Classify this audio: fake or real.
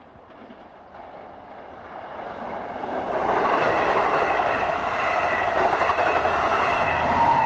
real